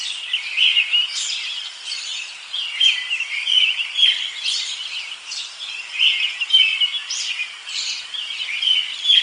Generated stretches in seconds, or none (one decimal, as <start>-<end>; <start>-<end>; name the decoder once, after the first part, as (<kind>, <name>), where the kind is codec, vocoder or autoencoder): 0.7-5.4 (vocoder, BigVGAN v2); 6.7-9.2